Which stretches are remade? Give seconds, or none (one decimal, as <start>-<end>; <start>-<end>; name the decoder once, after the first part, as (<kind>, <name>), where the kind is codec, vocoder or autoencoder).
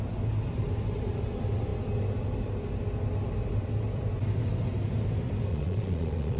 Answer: 5.5-6.4 (vocoder, Vocos)